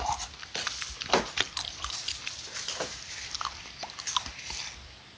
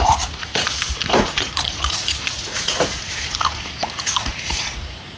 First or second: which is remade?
second